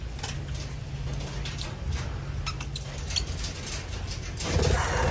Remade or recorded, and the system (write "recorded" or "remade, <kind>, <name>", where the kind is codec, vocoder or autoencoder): recorded